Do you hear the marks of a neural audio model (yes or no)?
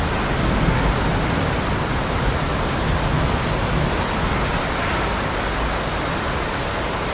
no